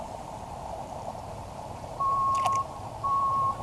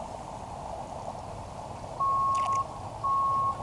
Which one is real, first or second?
second